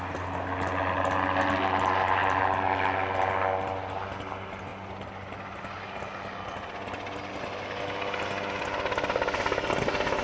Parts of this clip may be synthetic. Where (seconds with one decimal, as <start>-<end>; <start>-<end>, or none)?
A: none